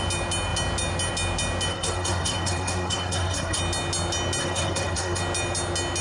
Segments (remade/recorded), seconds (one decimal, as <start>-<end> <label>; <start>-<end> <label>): 0.0-1.7 recorded; 1.7-3.6 remade; 3.6-4.4 recorded; 4.4-5.2 remade; 5.2-6.0 recorded